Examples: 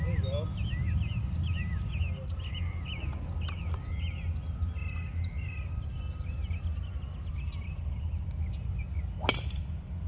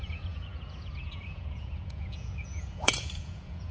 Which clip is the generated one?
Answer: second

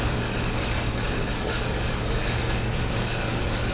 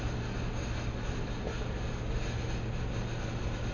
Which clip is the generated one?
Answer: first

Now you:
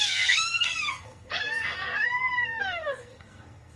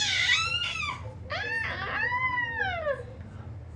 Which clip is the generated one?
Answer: first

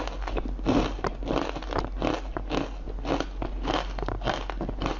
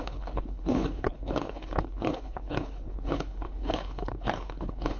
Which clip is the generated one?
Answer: second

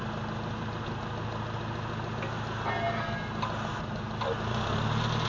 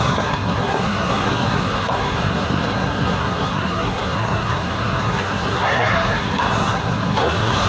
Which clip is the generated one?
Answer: second